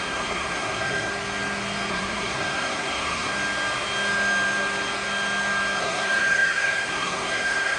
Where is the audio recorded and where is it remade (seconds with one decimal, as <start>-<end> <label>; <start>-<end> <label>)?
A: 0.0-1.1 remade; 1.1-1.9 recorded; 1.9-3.3 remade; 3.3-5.8 recorded; 5.8-7.8 remade